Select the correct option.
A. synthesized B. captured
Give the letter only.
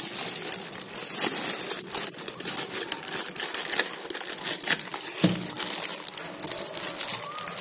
B